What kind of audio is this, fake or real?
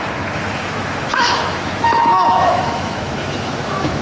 fake